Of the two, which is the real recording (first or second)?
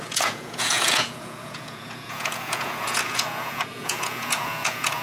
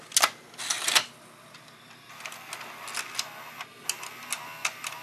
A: second